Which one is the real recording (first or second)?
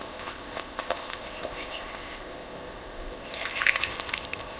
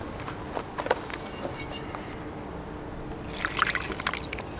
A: second